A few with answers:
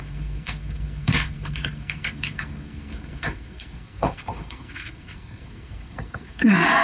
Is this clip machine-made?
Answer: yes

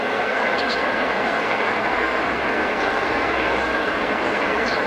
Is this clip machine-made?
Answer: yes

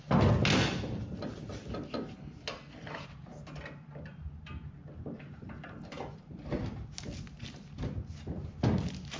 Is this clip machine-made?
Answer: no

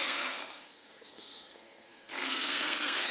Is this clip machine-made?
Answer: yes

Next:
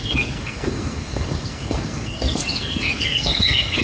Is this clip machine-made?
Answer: yes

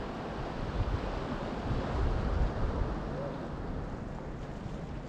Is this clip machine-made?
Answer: no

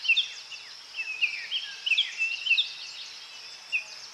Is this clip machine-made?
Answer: no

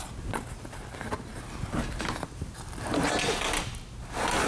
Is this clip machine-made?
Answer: no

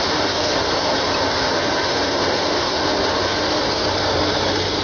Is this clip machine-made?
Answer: no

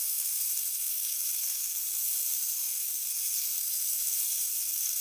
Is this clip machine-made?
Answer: yes